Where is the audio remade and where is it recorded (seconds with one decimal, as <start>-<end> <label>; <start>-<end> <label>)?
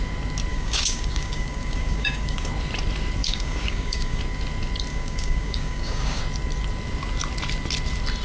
0.0-0.5 recorded; 0.5-2.5 remade; 2.5-3.2 recorded; 3.2-4.2 remade; 4.2-4.9 recorded; 4.9-6.2 remade; 6.2-8.2 recorded